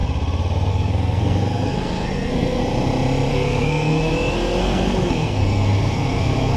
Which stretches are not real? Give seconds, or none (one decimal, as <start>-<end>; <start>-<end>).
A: 0.7-2.6; 3.3-4.1; 4.6-6.6